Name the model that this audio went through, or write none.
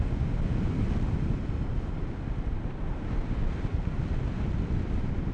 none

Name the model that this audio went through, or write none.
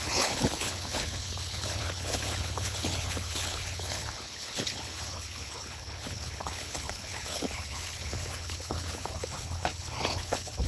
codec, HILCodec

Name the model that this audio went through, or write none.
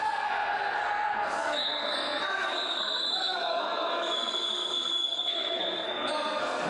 codec, SNAC